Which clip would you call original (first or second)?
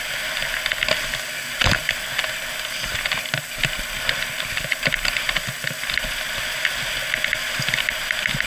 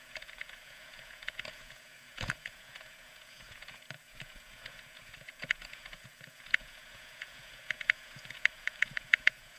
first